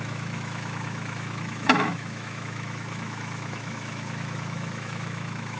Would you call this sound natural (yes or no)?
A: no